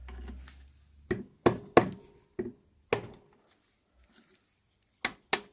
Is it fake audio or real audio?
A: real